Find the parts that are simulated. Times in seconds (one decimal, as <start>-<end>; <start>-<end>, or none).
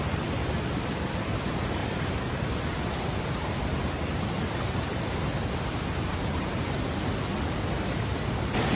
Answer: 1.8-5.0; 6.3-6.9